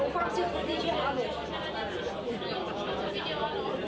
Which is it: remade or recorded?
recorded